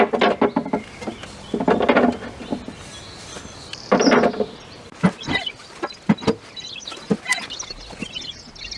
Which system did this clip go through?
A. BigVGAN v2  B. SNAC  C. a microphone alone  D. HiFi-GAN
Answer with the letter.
C